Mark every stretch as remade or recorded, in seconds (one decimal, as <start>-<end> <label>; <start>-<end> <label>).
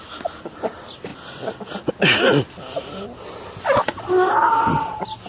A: 0.0-5.3 recorded